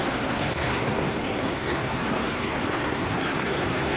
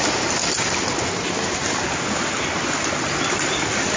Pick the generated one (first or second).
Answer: first